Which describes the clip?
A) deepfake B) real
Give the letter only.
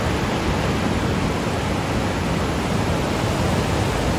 B